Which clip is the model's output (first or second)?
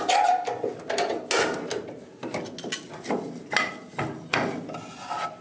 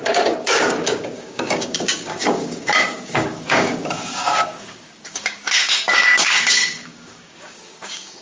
second